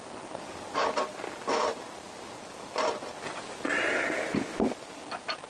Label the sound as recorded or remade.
recorded